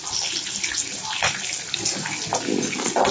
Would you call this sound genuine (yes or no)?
yes